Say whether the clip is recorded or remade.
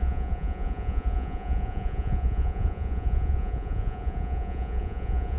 remade